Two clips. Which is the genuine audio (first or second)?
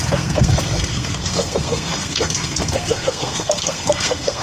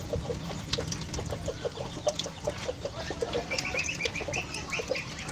second